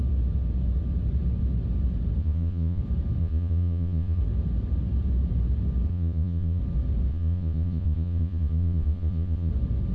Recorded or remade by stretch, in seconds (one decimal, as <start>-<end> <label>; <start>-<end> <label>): 0.0-2.2 recorded; 2.2-2.8 remade; 2.8-3.2 recorded; 3.2-4.2 remade; 4.2-5.9 recorded; 5.9-6.6 remade; 6.6-7.1 recorded; 7.1-9.5 remade; 9.5-9.9 recorded